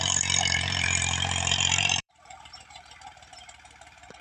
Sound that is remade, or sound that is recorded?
remade